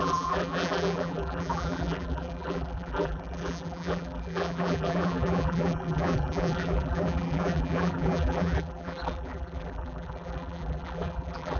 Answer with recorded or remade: remade